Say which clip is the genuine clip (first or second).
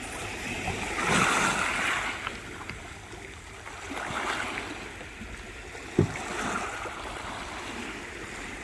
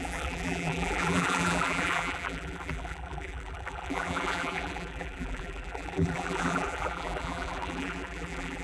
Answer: first